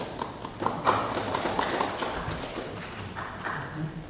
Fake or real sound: real